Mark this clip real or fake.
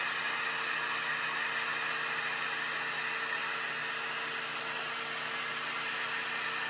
real